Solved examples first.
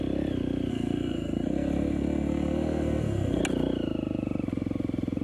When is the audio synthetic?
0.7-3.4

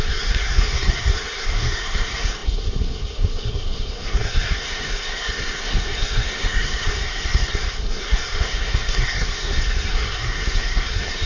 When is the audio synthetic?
0.0-11.3

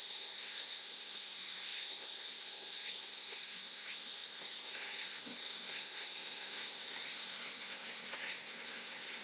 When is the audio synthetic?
0.0-9.2

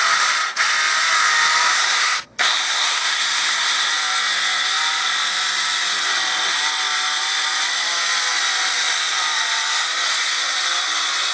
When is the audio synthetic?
1.7-3.9